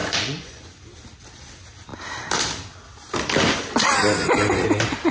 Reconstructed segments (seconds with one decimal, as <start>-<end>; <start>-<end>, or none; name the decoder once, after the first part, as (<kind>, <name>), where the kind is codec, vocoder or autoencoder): 0.0-0.8 (vocoder, Vocos)